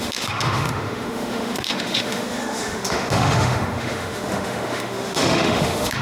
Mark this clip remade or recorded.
remade